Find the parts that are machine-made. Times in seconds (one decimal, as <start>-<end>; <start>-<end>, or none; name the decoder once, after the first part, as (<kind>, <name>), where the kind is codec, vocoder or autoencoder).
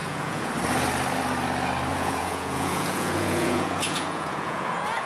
0.0-0.5 (vocoder, Vocos); 1.9-5.1